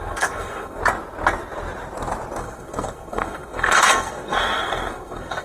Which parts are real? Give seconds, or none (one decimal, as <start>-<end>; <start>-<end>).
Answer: 0.8-2.4

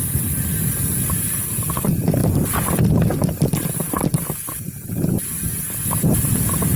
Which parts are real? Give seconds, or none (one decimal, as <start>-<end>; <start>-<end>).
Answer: 0.0-6.8

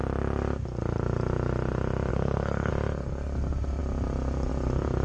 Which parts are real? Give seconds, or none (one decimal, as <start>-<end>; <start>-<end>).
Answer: 0.0-2.1; 2.7-5.0

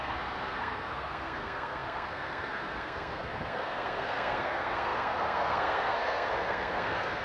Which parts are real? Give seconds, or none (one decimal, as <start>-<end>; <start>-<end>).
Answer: none

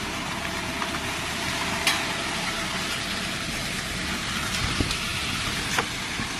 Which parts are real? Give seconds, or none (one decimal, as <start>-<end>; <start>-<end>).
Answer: 0.0-6.4

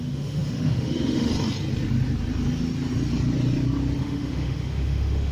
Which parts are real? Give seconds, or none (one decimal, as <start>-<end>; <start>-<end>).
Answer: 1.3-4.0

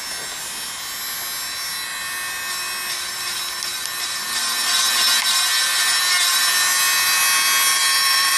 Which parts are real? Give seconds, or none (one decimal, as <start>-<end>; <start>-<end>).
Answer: 0.0-7.7